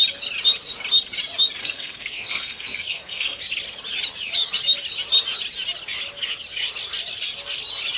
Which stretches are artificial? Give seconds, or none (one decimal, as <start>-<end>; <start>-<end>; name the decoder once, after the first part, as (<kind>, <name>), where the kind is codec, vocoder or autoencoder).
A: 1.6-3.4 (codec, SNAC)